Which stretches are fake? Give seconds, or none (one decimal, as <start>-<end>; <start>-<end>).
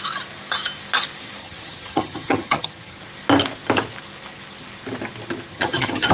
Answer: 1.4-3.0; 5.5-6.1